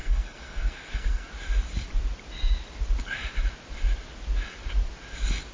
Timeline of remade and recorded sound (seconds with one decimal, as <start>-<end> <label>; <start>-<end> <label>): 0.0-1.3 remade; 1.3-5.5 recorded